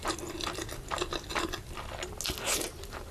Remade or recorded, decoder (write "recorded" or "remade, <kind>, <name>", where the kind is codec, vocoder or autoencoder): recorded